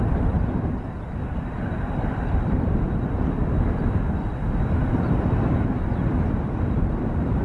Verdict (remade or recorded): remade